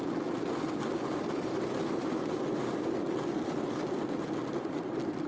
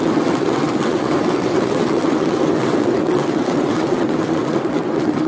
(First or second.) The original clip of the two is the first